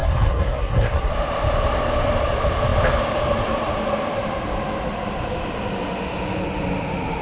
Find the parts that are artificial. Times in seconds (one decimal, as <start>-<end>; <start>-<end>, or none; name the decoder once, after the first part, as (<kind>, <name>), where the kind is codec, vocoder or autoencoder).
0.0-1.1 (codec, SNAC)